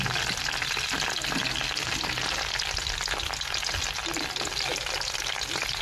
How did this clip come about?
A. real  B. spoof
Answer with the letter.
A